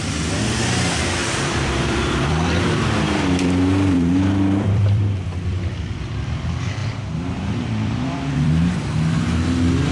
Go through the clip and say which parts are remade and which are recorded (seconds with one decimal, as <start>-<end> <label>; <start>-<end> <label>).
0.0-1.2 recorded; 1.2-6.1 remade; 6.1-6.8 recorded; 6.8-8.5 remade; 8.5-9.9 recorded